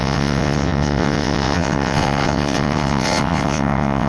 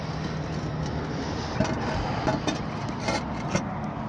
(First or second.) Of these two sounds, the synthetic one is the first